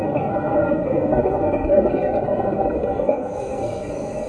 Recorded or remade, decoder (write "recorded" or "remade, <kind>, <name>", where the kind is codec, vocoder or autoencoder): remade, codec, SNAC